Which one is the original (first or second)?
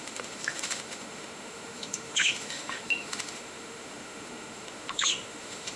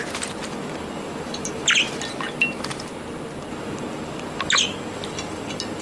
second